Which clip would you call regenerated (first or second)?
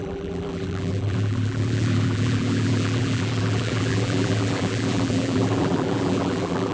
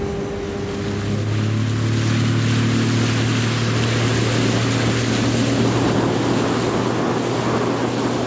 first